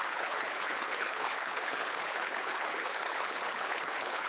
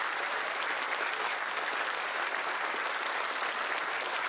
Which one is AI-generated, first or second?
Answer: first